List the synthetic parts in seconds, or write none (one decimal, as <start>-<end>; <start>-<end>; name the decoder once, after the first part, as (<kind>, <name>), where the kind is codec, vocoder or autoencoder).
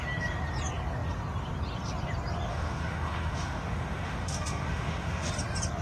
2.5-5.3 (autoencoder, DAC-VAE)